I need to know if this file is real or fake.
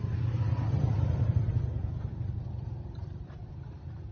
fake